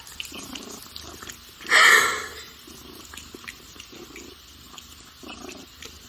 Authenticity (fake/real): real